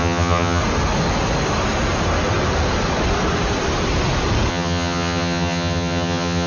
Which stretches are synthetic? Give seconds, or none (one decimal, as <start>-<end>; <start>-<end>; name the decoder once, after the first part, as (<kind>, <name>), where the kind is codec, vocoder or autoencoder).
0.0-0.6 (vocoder, HiFi-GAN); 4.5-6.5